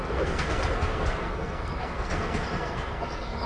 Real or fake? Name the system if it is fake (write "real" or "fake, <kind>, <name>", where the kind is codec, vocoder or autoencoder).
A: fake, codec, SNAC